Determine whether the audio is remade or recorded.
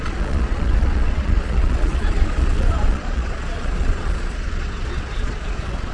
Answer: remade